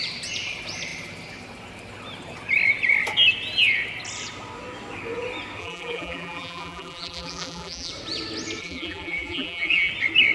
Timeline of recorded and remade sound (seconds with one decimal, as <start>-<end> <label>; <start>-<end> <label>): 0.0-5.6 recorded; 5.6-7.9 remade; 7.9-8.6 recorded; 8.6-9.9 remade; 9.9-10.3 recorded

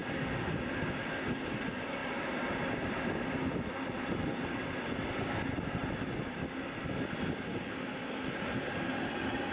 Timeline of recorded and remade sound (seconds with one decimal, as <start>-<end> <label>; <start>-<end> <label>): 0.0-0.8 remade; 0.8-2.0 recorded; 2.0-5.3 remade; 5.3-7.5 recorded; 7.5-8.9 remade; 8.9-9.5 recorded

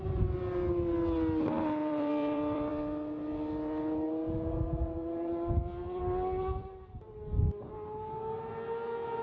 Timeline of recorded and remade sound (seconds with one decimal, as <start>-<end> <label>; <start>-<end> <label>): 0.0-1.8 recorded; 1.8-2.7 remade; 2.7-9.2 recorded

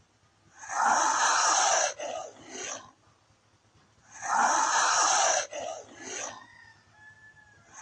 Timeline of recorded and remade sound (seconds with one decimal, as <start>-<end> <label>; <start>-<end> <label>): 0.0-7.8 recorded

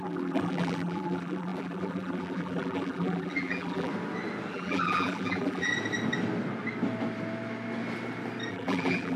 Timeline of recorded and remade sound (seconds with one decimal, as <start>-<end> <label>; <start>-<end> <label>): 0.0-3.9 remade; 3.9-4.5 recorded; 4.5-5.7 remade; 5.7-8.5 recorded; 8.5-9.2 remade